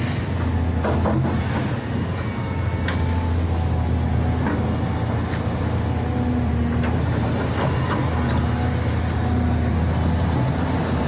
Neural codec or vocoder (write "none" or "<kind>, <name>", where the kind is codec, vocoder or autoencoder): none